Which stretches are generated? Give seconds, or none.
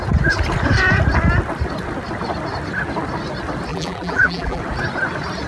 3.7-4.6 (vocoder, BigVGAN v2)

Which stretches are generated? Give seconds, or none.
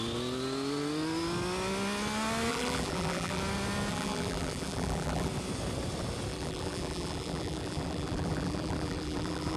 2.5-3.4 (vocoder, BigVGAN v2); 3.9-5.3; 6.3-9.6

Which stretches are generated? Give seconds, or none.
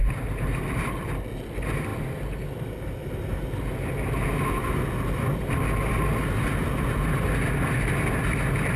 none